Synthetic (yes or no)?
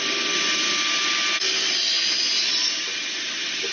no